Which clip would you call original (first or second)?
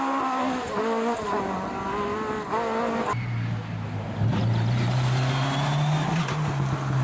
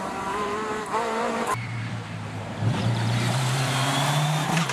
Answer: first